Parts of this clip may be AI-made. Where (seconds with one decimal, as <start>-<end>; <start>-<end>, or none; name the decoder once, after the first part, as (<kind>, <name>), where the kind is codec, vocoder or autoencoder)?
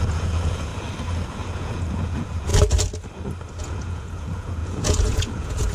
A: 0.0-0.7 (vocoder, Vocos); 1.3-2.5; 3.6-5.7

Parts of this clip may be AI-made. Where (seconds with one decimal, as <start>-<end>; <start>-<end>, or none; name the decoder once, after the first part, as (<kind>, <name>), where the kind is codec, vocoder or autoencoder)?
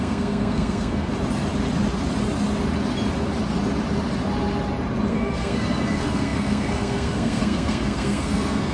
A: 0.0-1.1 (codec, SNAC); 5.1-8.7